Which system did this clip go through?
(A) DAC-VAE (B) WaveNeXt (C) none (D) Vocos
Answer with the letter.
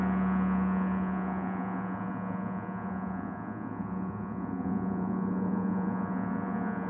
D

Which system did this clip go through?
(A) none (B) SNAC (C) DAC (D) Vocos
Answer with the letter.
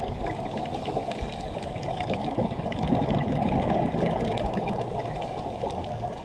C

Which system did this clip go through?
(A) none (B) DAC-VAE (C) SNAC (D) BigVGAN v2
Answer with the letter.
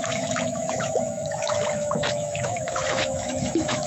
B